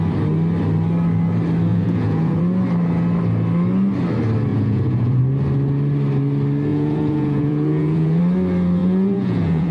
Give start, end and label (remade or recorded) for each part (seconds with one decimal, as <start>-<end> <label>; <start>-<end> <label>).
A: 0.0-1.7 recorded; 1.7-2.4 remade; 2.4-4.5 recorded; 4.5-5.2 remade; 5.2-6.7 recorded; 6.7-8.2 remade; 8.2-8.8 recorded; 8.8-9.7 remade